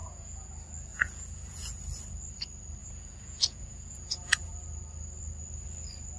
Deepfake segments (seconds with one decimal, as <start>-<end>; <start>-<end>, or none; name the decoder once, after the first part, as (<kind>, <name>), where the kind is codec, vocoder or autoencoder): 0.0-0.5 (vocoder, Vocos); 0.9-1.8; 2.8-4.5